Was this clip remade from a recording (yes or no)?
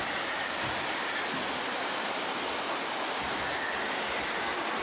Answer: no